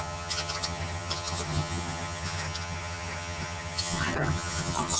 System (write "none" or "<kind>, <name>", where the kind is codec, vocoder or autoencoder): vocoder, HiFi-GAN